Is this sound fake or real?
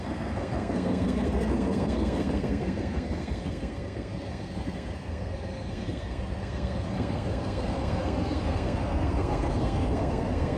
fake